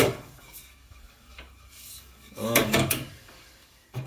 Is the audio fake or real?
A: fake